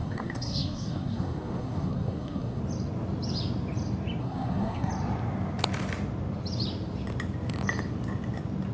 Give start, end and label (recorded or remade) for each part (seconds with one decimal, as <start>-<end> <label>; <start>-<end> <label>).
0.0-2.6 remade; 2.6-4.2 recorded; 4.2-4.9 remade; 4.9-8.7 recorded